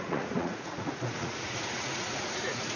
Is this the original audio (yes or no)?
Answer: no